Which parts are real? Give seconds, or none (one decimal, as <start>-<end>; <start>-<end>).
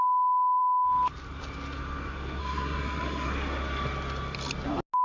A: 0.0-2.4; 3.3-5.0